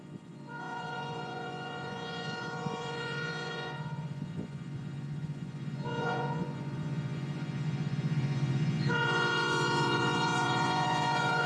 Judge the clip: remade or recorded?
remade